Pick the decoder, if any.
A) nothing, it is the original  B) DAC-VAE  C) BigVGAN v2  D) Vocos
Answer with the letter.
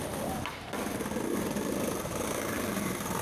A